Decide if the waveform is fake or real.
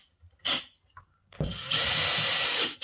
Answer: real